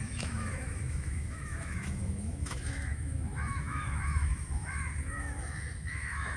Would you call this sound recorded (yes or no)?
no